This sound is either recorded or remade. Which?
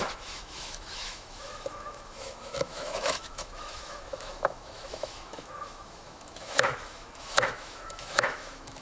remade